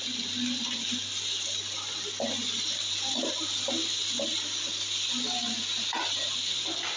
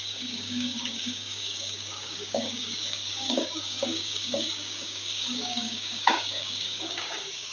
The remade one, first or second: second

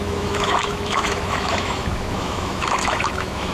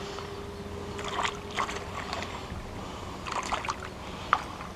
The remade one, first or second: first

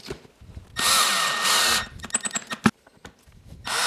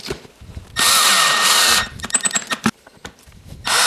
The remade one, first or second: second